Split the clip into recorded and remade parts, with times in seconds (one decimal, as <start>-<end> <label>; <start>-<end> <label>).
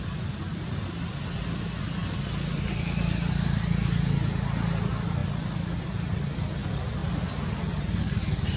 0.0-8.6 recorded